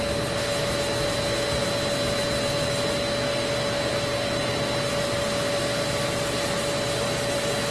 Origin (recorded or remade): recorded